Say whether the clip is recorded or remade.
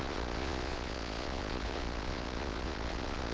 remade